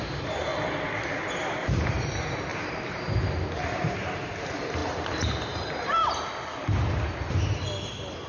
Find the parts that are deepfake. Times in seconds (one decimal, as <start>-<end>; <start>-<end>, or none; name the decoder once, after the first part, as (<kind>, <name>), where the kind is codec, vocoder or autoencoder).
0.0-0.5 (vocoder, BigVGAN v2); 1.3-2.5; 3.8-6.0